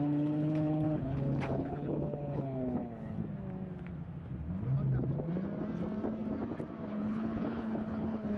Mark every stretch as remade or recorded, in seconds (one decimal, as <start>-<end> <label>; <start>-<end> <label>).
0.0-3.2 remade; 3.2-6.9 recorded; 6.9-8.4 remade

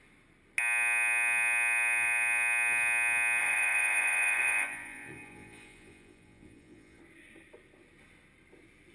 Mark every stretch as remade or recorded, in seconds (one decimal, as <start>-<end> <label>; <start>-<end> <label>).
0.0-3.4 recorded; 3.4-7.0 remade; 7.0-8.9 recorded

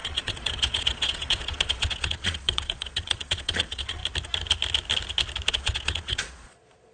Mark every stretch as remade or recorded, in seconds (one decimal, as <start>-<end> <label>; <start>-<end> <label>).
0.0-4.0 remade; 4.0-5.5 recorded; 5.5-6.9 remade

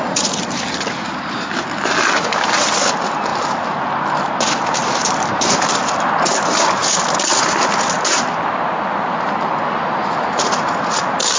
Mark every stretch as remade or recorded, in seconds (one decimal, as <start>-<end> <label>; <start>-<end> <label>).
0.0-11.4 recorded

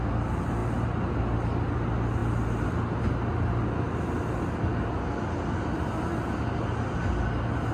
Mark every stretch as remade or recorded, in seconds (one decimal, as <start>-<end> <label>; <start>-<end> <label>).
0.0-7.7 recorded

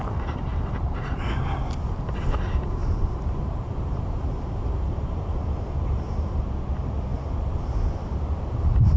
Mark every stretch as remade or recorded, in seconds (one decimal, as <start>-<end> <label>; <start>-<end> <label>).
0.0-0.5 recorded; 0.5-1.2 remade; 1.2-2.8 recorded; 2.8-6.4 remade; 6.4-9.0 recorded

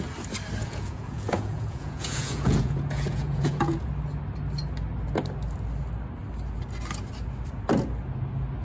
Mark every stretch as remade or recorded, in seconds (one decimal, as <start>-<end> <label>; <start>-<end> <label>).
0.0-0.6 recorded; 0.6-3.9 remade; 3.9-8.6 recorded